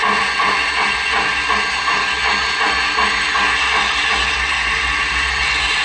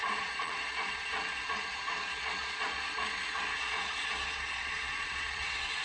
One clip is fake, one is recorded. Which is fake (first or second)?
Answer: second